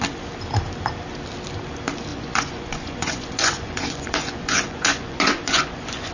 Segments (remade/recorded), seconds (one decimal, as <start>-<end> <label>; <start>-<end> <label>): 0.0-2.1 recorded; 2.1-6.1 remade